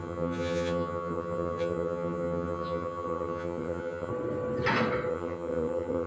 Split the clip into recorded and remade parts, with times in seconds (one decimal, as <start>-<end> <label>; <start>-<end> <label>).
0.0-4.1 remade; 4.1-5.1 recorded; 5.1-6.1 remade